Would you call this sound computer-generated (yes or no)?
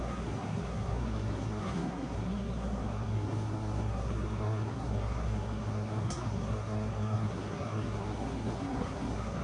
yes